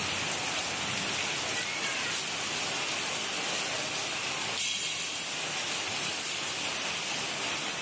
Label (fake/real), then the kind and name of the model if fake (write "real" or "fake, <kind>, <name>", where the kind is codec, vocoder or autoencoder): real